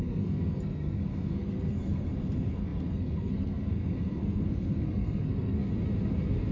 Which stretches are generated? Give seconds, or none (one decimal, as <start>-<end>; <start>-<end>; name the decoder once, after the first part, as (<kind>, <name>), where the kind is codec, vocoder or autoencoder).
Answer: 0.0-5.7 (codec, SNAC)